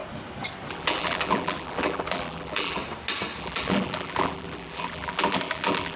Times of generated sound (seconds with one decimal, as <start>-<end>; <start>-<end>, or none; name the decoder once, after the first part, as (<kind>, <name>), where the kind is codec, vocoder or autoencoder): 0.7-2.8 (vocoder, BigVGAN v2); 3.4-6.0